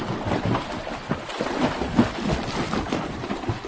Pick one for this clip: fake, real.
real